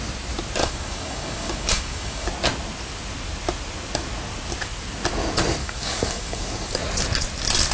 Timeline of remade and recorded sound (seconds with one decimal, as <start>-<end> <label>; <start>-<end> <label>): 0.0-0.6 recorded; 0.6-2.3 remade; 2.3-5.6 recorded; 5.6-6.8 remade; 6.8-7.7 recorded